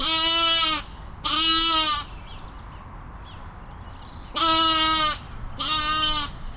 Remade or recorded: recorded